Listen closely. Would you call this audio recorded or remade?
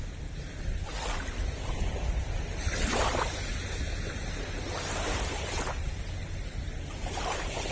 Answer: recorded